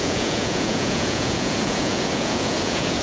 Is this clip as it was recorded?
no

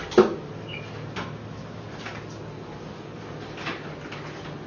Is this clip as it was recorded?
yes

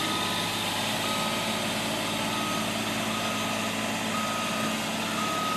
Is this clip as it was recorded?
yes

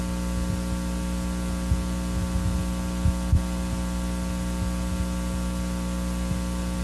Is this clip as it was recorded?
yes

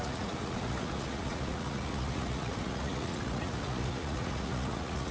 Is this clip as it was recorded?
no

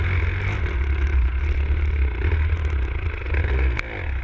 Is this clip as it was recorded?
yes